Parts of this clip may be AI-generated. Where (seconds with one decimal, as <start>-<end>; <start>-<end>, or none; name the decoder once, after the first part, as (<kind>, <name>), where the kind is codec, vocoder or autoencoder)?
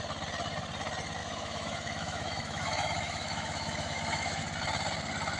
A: 1.2-4.4 (autoencoder, DAC-VAE)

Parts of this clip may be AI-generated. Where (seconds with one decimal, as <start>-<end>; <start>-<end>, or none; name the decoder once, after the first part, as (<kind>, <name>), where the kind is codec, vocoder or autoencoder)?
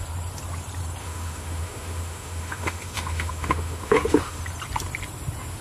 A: 1.0-4.4 (autoencoder, DAC-VAE)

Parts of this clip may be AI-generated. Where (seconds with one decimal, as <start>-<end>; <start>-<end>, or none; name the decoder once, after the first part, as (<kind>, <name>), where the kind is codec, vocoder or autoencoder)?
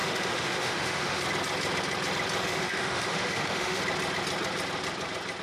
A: 0.0-1.2 (autoencoder, DAC-VAE); 2.4-3.8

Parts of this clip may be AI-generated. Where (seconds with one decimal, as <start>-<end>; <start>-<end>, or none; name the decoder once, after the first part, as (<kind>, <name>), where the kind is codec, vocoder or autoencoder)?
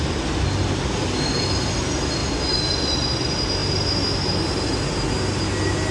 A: none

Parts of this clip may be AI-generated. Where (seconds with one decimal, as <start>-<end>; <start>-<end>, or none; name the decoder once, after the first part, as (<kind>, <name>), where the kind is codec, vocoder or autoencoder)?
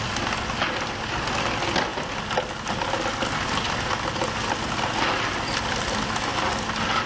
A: none